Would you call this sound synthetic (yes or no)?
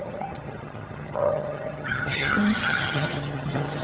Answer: yes